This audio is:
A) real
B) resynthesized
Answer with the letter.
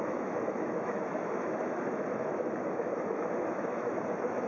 B